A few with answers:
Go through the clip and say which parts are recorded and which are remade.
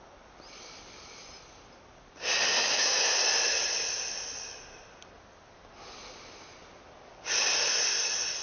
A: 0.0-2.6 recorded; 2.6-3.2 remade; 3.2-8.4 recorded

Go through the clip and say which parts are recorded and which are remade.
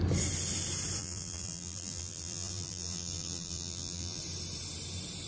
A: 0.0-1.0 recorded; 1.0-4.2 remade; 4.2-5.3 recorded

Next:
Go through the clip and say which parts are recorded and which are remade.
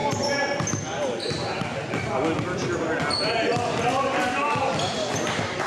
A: 0.0-5.7 recorded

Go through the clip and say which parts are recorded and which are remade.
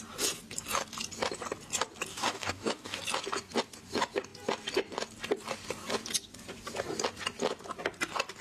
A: 0.0-2.1 recorded; 2.1-3.0 remade; 3.0-8.4 recorded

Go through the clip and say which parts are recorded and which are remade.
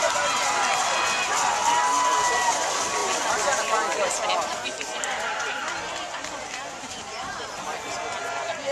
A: 0.0-8.7 recorded